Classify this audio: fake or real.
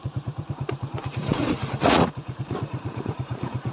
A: fake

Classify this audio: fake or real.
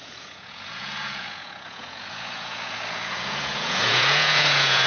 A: fake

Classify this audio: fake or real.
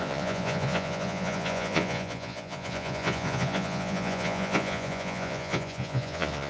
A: fake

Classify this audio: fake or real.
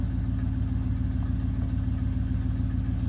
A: real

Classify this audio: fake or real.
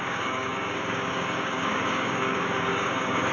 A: fake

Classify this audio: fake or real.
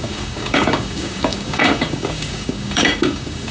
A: fake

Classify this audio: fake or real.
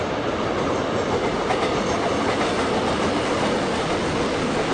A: real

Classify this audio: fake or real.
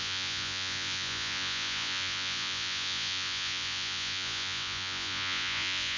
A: fake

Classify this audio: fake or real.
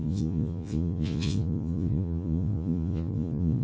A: fake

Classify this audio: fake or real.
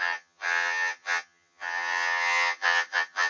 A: fake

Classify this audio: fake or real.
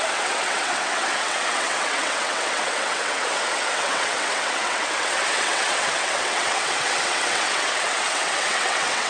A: fake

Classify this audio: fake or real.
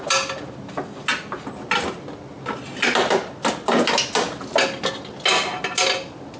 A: real